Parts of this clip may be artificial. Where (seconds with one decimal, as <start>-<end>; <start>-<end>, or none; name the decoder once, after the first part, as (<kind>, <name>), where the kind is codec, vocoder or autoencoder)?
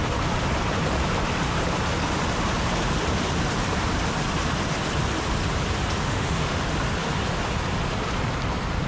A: 6.0-6.6 (autoencoder, DAC-VAE)